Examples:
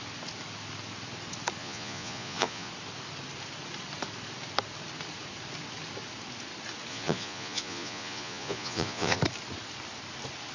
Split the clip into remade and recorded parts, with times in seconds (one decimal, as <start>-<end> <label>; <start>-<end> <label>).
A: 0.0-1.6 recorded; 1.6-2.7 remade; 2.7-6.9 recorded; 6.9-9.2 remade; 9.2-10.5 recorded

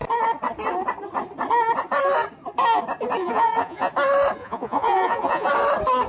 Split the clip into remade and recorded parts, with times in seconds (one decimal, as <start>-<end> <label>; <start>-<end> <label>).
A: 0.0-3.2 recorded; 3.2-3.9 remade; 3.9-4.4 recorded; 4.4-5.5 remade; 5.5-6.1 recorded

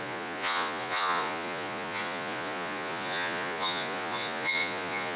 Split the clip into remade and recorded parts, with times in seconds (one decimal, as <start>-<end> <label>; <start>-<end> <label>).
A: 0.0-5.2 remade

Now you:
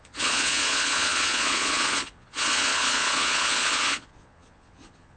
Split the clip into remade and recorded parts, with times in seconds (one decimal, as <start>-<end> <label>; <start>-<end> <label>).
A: 0.0-5.2 remade

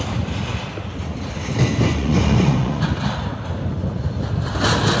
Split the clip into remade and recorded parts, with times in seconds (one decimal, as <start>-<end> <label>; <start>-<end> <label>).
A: 0.0-1.9 recorded; 1.9-2.9 remade; 2.9-5.0 recorded

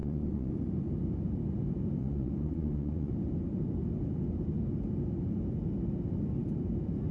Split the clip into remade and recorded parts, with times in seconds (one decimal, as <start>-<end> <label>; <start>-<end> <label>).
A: 0.0-0.5 remade; 0.5-2.0 recorded; 2.0-3.1 remade; 3.1-7.1 recorded